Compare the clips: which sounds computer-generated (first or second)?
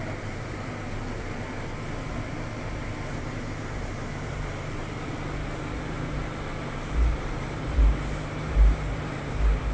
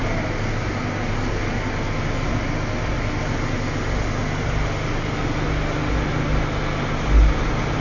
first